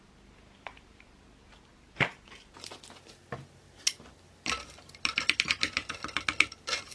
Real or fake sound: real